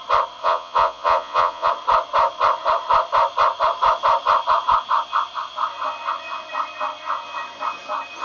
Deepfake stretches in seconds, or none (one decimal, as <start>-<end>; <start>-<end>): 0.4-1.7